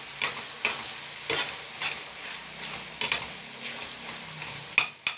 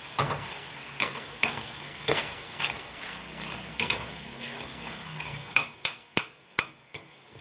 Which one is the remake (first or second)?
second